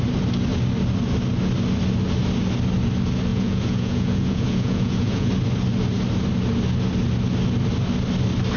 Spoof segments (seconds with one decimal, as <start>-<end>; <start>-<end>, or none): 3.3-5.3